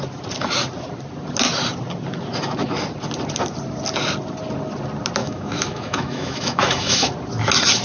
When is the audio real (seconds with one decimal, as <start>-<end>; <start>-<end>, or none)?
0.0-5.2; 7.1-7.8